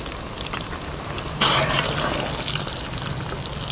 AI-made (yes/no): no